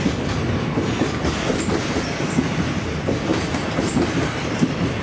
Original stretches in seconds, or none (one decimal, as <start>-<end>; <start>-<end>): 0.0-3.3; 4.2-5.0